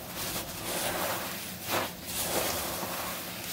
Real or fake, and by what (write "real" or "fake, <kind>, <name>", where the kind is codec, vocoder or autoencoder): real